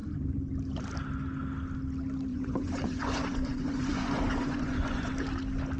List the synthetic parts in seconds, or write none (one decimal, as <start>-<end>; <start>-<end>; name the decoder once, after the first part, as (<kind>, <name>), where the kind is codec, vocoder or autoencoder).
2.3-5.1 (vocoder, Vocos)